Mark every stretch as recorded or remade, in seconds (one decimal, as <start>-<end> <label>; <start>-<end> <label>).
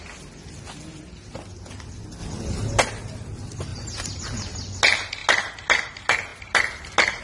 0.0-3.7 recorded; 3.7-4.2 remade; 4.2-7.2 recorded